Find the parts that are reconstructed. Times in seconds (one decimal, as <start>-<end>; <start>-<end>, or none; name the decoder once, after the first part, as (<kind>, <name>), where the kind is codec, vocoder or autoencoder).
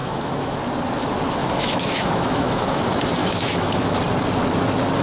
0.0-0.6 (autoencoder, DAC-VAE); 1.4-2.8; 3.2-4.0